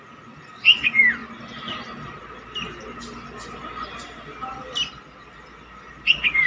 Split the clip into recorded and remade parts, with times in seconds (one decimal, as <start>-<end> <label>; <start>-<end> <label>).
0.0-6.5 recorded